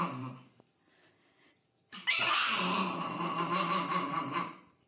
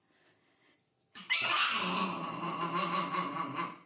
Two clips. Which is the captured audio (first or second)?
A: second